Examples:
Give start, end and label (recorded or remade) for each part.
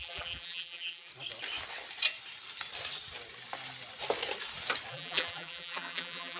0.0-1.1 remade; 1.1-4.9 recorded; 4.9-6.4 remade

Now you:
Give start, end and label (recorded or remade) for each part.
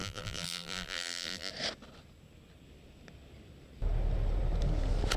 0.0-1.5 remade; 1.5-5.2 recorded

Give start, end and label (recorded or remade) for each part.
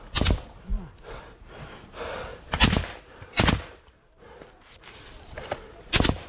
0.0-2.3 recorded; 2.3-6.3 remade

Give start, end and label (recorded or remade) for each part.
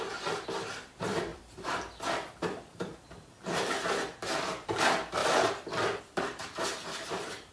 0.0-5.2 remade; 5.2-6.0 recorded; 6.0-7.5 remade